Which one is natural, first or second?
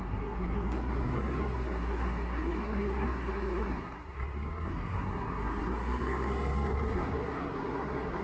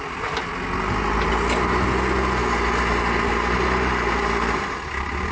second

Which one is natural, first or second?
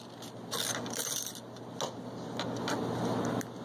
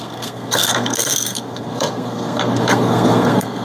first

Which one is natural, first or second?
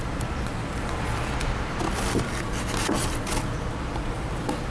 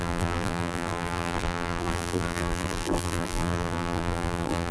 first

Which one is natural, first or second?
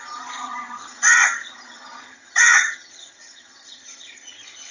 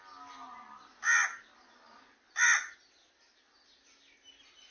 second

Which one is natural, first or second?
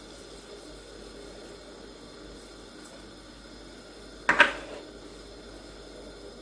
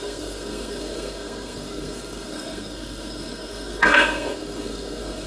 first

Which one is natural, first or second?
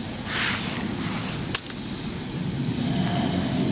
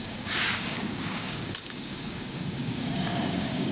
first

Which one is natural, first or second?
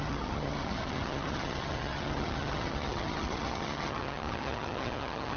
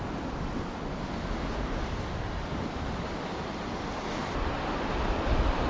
second